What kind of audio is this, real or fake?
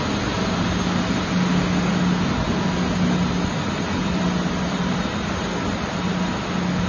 real